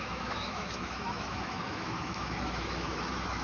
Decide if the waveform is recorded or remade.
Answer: remade